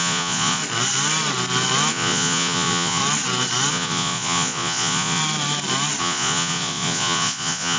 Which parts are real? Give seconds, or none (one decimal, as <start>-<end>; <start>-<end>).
0.6-1.9; 3.0-3.7; 5.2-6.0